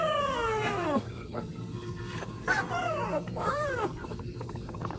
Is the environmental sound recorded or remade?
remade